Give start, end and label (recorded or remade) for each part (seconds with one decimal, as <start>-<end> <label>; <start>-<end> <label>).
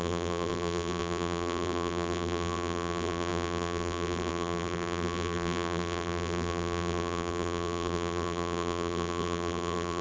0.0-10.0 remade